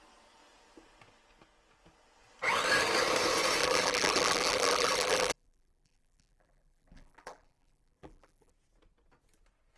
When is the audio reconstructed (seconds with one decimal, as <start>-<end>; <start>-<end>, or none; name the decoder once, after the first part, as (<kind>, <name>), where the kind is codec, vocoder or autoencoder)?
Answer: 3.6-8.5 (vocoder, BigVGAN v2)